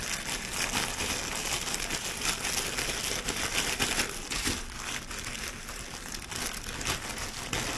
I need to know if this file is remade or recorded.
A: recorded